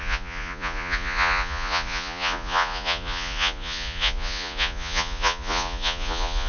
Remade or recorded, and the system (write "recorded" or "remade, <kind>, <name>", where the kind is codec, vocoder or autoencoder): remade, vocoder, Vocos